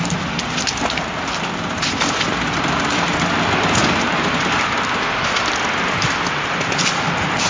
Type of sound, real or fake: real